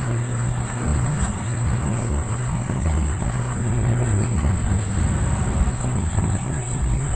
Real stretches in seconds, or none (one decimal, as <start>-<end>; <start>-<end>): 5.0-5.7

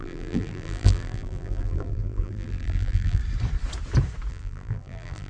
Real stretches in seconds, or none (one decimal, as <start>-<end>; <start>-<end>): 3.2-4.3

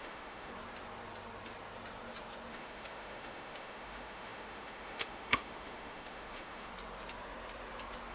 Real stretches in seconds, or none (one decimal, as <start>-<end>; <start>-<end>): 0.5-2.5; 6.7-8.1

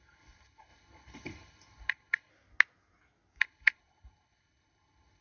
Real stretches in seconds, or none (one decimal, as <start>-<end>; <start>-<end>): 2.3-3.4